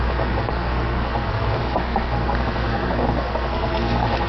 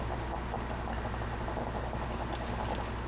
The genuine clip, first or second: second